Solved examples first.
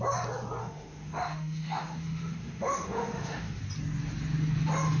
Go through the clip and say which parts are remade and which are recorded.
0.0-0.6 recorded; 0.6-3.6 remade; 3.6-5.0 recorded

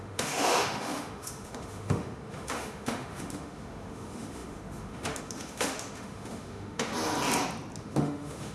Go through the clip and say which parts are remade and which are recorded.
0.0-6.9 remade; 6.9-7.8 recorded; 7.8-8.5 remade

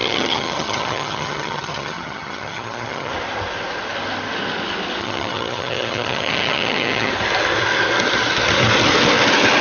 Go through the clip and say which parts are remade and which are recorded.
0.0-3.1 remade; 3.1-5.0 recorded; 5.0-7.1 remade; 7.1-9.6 recorded